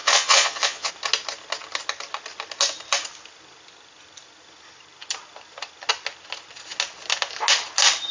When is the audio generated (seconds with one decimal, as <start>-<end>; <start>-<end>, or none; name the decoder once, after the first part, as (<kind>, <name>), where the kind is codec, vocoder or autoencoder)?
0.0-0.9 (vocoder, Vocos)